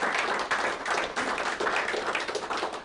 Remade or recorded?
recorded